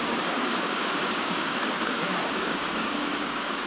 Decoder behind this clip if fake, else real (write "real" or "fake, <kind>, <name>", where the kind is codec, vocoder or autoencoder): fake, codec, DAC